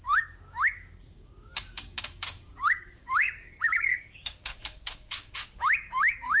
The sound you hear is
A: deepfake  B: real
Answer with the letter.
A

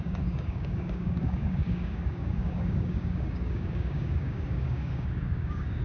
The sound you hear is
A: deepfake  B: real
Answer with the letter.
A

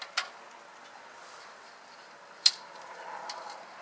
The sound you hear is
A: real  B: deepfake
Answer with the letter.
A